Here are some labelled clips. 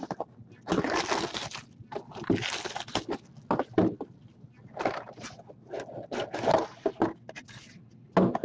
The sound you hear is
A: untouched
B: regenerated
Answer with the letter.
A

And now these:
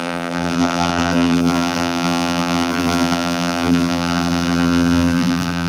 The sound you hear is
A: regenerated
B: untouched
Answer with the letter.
A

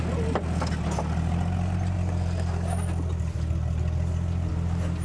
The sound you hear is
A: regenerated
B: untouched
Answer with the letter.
B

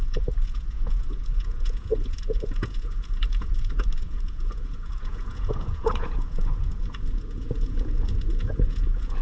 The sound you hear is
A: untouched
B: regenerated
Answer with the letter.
B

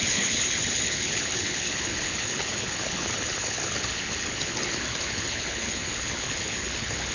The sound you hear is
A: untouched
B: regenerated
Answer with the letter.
B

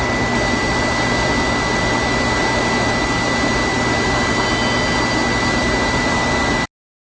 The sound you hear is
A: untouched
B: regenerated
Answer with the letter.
A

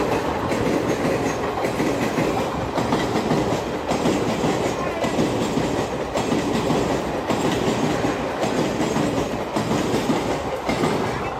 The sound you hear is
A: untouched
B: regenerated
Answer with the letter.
A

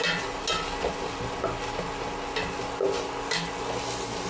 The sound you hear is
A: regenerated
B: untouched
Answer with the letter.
B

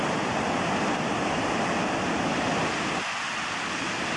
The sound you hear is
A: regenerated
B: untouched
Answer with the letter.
B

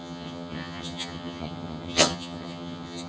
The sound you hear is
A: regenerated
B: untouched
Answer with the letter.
A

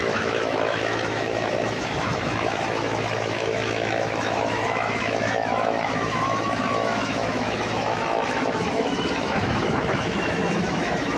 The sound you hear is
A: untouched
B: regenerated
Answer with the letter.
B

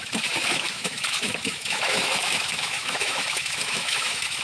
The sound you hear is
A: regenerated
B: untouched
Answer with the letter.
A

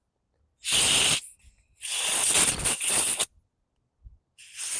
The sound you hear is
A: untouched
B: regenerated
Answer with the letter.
A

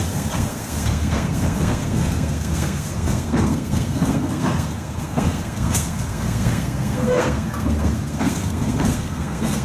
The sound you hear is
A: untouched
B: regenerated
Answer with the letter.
B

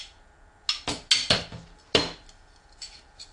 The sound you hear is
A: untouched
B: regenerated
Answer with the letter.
A